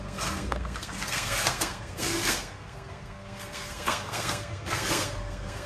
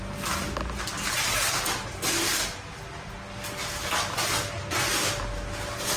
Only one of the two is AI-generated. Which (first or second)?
first